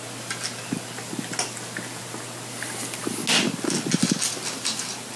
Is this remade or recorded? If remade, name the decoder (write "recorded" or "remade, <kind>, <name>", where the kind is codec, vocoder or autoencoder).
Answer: recorded